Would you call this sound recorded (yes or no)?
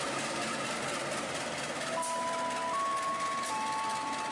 yes